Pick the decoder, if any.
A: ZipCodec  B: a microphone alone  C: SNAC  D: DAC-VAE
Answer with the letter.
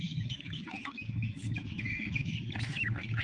D